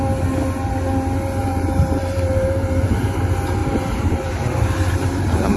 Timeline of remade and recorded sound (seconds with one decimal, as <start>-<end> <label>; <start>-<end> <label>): 0.0-1.4 recorded; 1.4-3.2 remade; 3.2-3.6 recorded; 3.6-5.6 remade